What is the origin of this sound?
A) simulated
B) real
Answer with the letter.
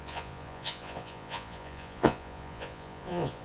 A